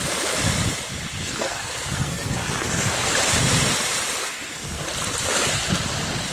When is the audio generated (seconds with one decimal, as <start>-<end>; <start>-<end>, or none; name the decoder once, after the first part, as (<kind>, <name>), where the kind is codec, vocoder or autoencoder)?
1.2-3.1 (codec, SNAC); 4.2-4.8